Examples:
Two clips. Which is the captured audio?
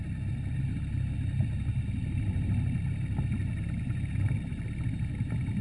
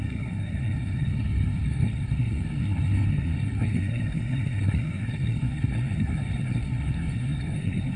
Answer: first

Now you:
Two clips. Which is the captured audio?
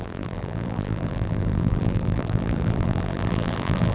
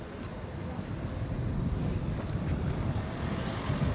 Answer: second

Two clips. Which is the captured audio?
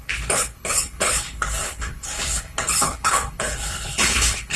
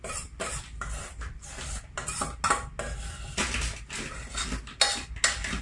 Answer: second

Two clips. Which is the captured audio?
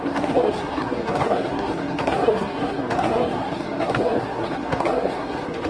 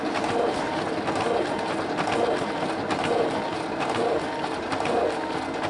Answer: second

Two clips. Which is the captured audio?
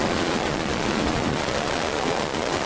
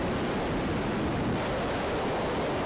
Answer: second